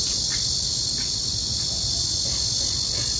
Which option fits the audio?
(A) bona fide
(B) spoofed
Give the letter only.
A